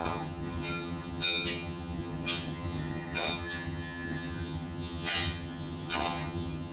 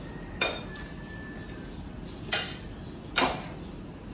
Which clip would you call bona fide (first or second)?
second